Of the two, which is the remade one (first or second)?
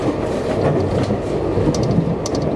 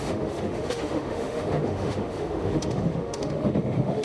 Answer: second